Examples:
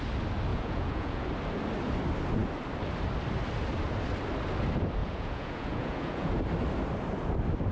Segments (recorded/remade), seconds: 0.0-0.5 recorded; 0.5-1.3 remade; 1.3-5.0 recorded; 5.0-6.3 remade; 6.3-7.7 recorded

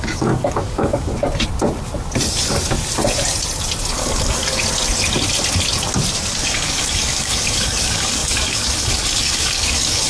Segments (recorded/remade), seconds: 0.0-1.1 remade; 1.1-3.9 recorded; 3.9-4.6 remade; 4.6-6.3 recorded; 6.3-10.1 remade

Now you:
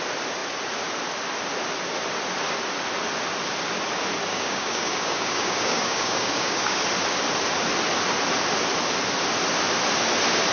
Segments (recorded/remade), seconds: 0.0-4.3 recorded; 4.3-6.8 remade; 6.8-10.5 recorded

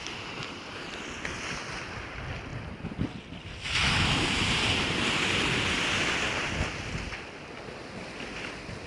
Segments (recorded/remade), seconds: 0.0-8.9 recorded